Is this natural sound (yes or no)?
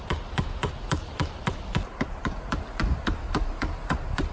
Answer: yes